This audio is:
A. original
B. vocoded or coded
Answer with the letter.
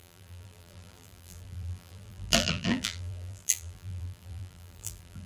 B